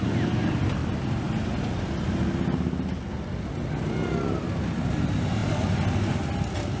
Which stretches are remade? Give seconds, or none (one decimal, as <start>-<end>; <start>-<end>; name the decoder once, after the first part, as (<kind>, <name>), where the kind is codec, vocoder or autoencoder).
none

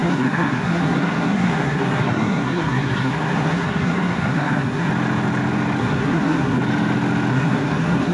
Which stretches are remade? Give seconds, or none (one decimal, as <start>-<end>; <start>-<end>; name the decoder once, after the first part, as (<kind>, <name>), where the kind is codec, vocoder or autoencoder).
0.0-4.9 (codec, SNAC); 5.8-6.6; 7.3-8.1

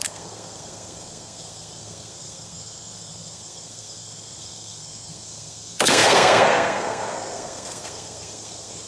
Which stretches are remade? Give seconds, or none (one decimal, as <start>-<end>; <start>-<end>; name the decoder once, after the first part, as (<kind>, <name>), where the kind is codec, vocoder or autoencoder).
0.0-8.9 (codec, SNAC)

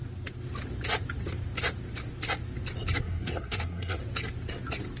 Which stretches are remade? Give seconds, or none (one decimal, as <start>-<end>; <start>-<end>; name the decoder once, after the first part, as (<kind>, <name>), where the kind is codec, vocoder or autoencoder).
3.0-4.0 (codec, SNAC)